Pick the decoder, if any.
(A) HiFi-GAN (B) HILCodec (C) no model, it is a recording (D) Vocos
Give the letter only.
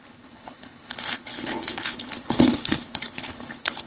B